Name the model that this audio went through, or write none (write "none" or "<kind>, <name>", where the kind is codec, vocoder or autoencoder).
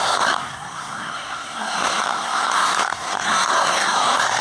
codec, SNAC